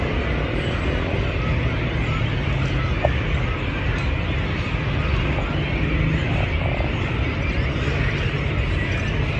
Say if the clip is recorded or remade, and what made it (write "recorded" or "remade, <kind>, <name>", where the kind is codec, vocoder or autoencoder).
recorded